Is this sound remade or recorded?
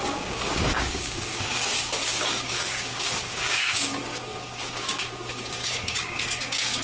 remade